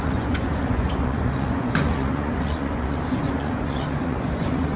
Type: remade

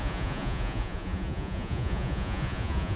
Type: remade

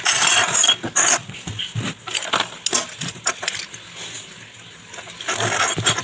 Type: recorded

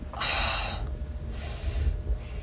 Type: recorded